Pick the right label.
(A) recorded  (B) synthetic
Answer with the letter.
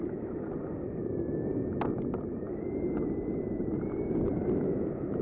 A